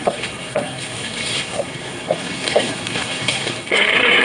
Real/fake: fake